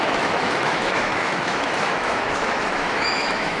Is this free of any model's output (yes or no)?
no